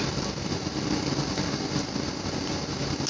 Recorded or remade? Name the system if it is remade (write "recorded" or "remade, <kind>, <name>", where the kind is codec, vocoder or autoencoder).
recorded